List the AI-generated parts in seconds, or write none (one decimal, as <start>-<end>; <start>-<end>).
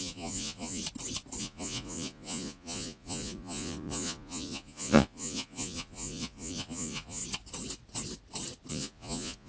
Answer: 0.0-0.8; 1.4-7.2; 8.7-9.5